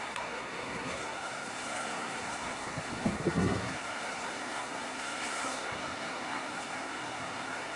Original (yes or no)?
no